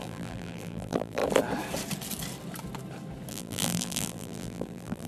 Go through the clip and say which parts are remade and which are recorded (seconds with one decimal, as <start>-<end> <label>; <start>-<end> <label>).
0.0-1.2 remade; 1.2-3.3 recorded; 3.3-5.1 remade